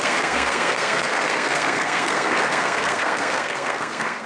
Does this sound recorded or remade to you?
remade